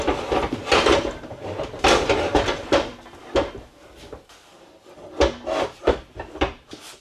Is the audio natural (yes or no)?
yes